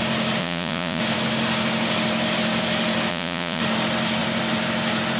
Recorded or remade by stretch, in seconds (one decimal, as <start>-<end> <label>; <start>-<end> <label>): 0.0-0.4 recorded; 0.4-1.0 remade; 1.0-3.1 recorded; 3.1-3.6 remade; 3.6-5.2 recorded